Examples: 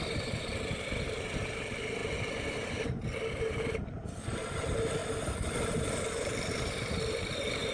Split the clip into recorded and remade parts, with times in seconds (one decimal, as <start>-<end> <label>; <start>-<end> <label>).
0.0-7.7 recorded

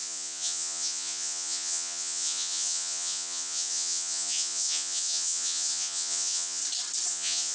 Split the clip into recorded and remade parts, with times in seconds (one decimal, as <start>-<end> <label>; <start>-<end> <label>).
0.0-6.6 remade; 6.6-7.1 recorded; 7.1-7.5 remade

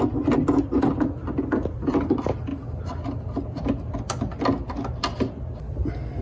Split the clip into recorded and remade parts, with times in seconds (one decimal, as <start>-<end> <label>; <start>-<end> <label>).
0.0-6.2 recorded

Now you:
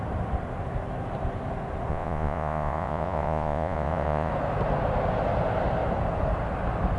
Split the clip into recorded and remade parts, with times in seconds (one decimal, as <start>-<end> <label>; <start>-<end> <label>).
0.0-1.9 recorded; 1.9-4.3 remade; 4.3-7.0 recorded